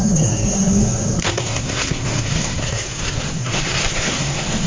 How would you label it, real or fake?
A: fake